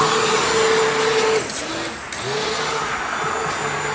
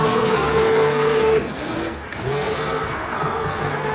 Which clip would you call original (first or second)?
first